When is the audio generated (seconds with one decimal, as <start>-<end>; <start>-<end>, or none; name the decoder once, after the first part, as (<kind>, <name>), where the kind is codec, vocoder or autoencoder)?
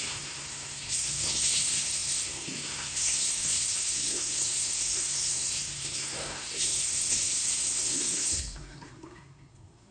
0.0-9.9 (codec, SNAC)